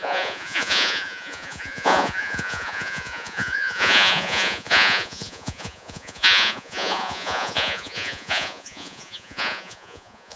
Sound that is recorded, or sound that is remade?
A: remade